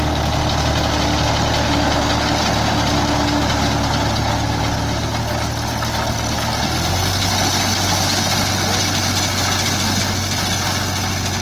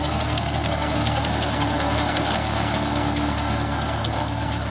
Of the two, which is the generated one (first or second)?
second